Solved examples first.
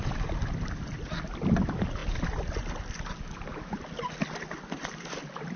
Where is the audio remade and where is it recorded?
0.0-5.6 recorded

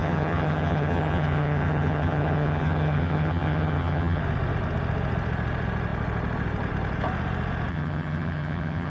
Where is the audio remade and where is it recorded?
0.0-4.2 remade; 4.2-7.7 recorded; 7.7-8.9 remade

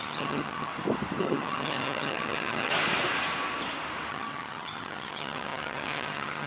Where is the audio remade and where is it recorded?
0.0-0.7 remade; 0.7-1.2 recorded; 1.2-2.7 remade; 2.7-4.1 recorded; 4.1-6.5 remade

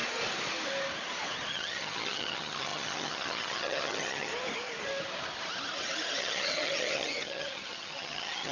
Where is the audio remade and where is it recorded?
0.0-1.5 recorded; 1.5-4.3 remade; 4.3-6.2 recorded; 6.2-8.5 remade

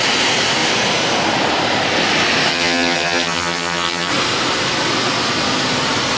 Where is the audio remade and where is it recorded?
0.0-2.5 recorded; 2.5-4.1 remade; 4.1-6.2 recorded